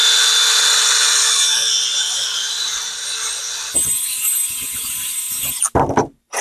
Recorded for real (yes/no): yes